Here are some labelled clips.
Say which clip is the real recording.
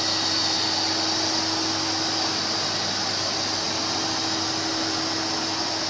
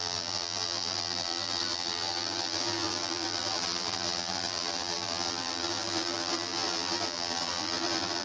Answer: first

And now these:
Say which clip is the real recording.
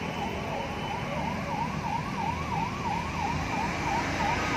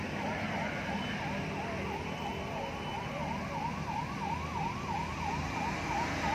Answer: second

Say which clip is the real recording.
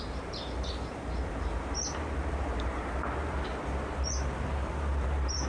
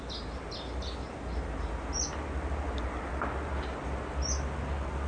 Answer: second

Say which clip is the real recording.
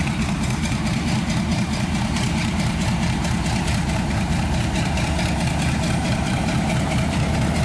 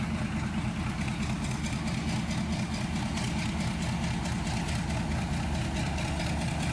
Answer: second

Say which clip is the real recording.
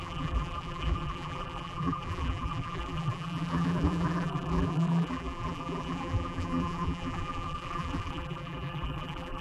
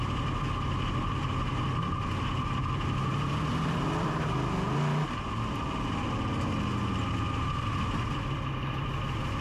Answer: second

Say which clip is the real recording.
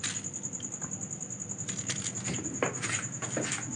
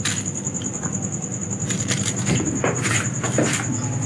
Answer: first